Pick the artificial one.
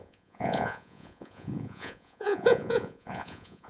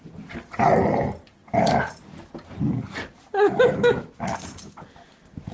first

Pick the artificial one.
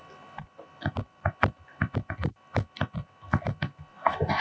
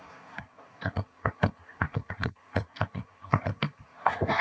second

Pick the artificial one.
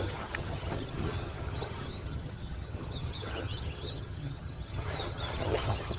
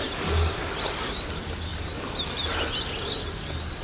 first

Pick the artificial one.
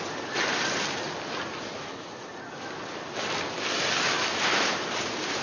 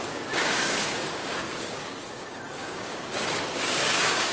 second